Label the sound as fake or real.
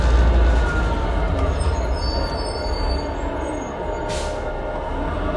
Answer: real